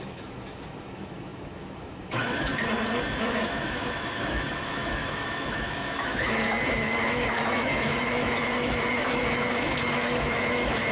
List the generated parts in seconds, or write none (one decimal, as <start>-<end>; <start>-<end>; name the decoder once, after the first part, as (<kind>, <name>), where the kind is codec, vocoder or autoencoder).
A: 0.0-2.5 (autoencoder, DAC-VAE); 3.2-10.9